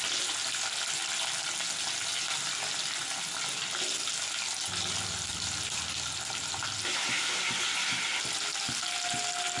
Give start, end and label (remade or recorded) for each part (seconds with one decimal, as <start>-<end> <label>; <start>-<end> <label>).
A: 0.0-9.6 recorded